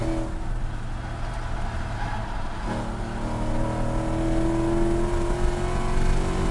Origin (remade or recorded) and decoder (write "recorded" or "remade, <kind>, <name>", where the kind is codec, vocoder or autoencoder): recorded